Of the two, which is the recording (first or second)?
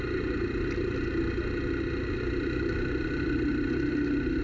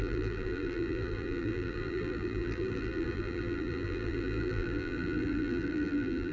first